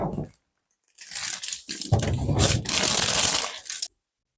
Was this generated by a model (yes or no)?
no